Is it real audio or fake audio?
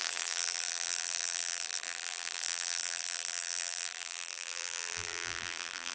fake